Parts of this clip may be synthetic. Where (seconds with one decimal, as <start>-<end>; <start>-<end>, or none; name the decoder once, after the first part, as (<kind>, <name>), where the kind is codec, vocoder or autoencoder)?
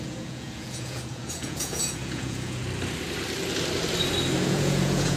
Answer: 0.0-2.6 (vocoder, Vocos); 4.5-5.2